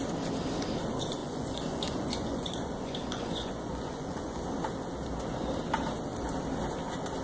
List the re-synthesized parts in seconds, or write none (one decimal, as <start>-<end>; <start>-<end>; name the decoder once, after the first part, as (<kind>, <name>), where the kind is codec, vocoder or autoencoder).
1.2-4.4 (vocoder, Vocos)